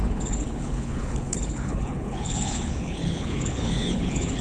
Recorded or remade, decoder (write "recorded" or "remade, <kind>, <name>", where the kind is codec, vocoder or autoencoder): remade, codec, HILCodec